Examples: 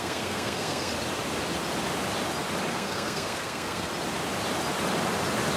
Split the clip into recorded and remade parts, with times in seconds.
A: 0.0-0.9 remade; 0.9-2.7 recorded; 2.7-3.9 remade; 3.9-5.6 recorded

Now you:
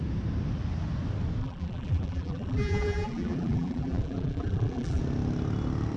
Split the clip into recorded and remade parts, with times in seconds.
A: 0.0-1.4 recorded; 1.4-5.0 remade; 5.0-6.0 recorded

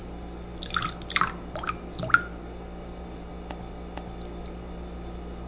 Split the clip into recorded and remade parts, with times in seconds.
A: 0.0-5.5 recorded

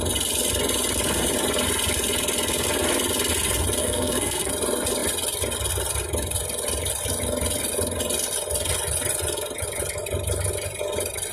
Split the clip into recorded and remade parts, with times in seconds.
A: 0.0-3.8 recorded; 3.8-4.5 remade; 4.5-11.3 recorded

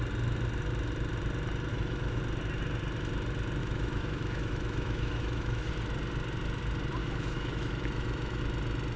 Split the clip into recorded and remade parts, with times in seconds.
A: 0.0-1.7 recorded; 1.7-2.2 remade; 2.2-3.6 recorded; 3.6-5.7 remade; 5.7-7.0 recorded; 7.0-8.4 remade; 8.4-9.0 recorded

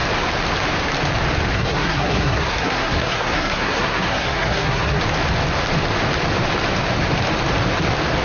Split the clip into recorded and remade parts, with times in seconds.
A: 0.0-1.5 recorded; 1.5-5.0 remade; 5.0-8.2 recorded

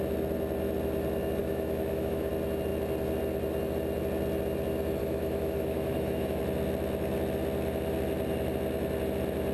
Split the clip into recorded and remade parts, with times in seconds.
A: 0.0-1.4 recorded; 1.4-2.3 remade; 2.3-5.0 recorded; 5.0-6.4 remade; 6.4-9.5 recorded

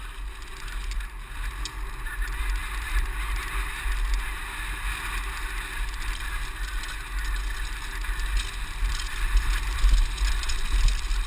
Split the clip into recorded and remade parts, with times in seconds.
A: 0.0-2.6 recorded; 2.6-3.4 remade; 3.4-11.3 recorded